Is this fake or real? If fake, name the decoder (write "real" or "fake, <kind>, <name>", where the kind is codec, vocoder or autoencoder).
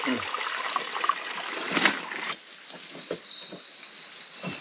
real